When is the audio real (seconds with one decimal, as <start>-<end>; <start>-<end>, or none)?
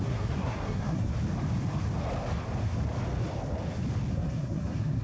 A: 1.1-4.1